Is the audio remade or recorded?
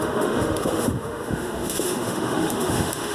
remade